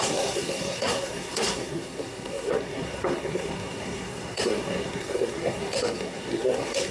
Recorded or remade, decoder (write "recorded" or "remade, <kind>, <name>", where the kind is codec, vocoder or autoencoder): remade, codec, SNAC